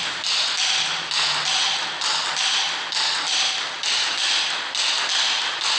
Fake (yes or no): no